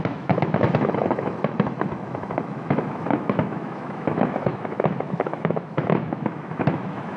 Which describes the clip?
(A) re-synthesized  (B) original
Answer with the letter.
A